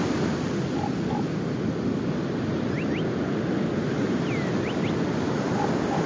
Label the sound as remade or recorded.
recorded